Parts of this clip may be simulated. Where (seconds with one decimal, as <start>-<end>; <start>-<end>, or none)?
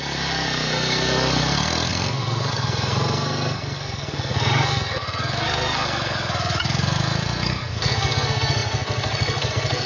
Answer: 0.0-9.9